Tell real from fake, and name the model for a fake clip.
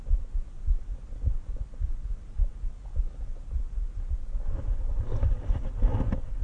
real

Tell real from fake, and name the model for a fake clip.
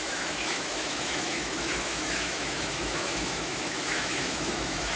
fake, autoencoder, DAC-VAE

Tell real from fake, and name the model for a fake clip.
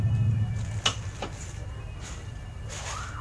real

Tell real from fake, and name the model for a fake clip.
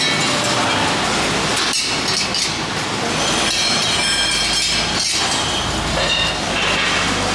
real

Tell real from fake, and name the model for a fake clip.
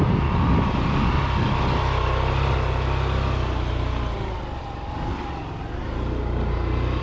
real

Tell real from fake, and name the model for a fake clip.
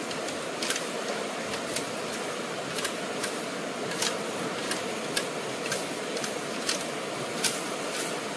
real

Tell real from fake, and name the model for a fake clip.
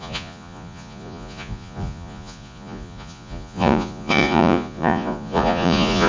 fake, vocoder, Vocos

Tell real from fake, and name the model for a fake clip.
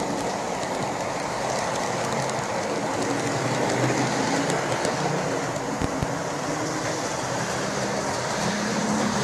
fake, vocoder, BigVGAN v2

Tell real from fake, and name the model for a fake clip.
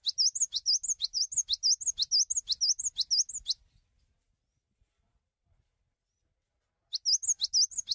real